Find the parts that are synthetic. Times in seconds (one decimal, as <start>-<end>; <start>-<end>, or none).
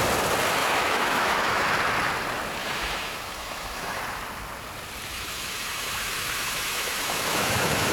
0.6-1.7; 2.6-4.0; 5.1-7.9